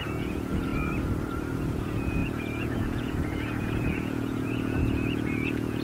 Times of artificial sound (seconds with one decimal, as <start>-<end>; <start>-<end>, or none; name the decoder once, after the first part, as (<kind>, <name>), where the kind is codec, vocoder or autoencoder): 0.0-0.7 (vocoder, Vocos); 1.8-5.8